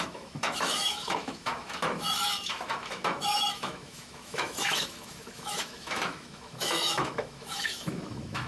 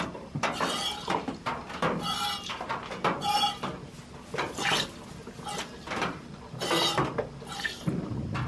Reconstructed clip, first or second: first